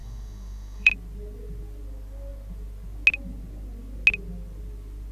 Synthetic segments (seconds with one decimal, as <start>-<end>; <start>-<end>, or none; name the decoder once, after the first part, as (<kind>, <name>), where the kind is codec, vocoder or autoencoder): 0.0-0.9 (autoencoder, DAC-VAE)